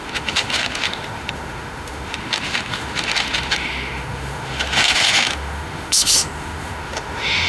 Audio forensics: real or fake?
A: fake